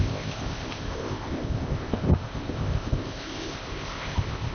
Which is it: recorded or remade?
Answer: remade